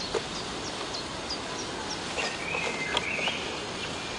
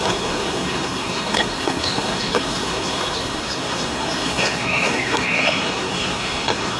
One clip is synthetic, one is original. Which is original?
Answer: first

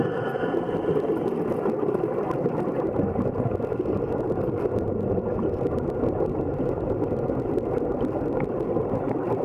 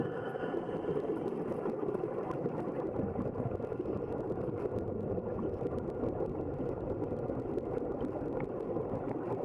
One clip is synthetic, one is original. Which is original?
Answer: first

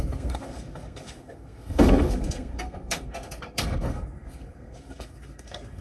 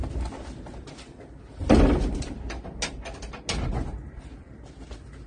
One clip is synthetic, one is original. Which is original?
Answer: second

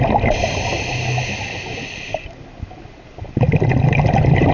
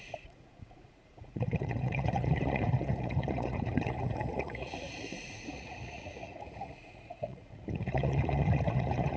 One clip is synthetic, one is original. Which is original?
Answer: first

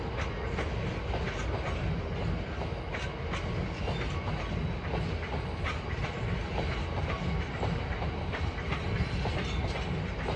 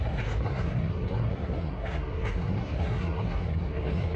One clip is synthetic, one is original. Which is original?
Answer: first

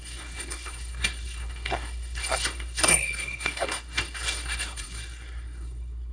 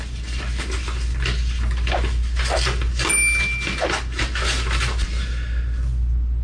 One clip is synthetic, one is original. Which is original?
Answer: second